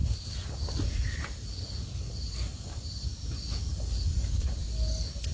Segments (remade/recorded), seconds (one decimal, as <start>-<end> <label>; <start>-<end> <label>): 0.0-5.3 recorded